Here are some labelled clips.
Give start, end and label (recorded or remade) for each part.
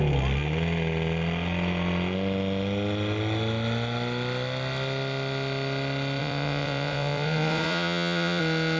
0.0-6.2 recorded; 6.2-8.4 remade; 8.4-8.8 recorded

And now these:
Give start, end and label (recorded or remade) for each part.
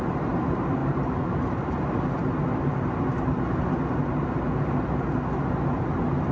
0.0-6.3 recorded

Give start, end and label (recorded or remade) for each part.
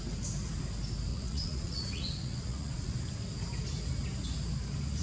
0.0-1.1 recorded; 1.1-3.0 remade; 3.0-5.0 recorded